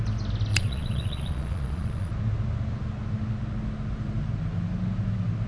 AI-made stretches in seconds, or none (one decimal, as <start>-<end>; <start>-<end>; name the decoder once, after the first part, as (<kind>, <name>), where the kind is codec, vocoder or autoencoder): 0.5-2.1 (vocoder, Vocos)